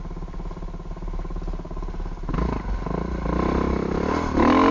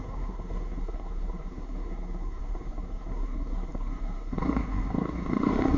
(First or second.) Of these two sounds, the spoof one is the second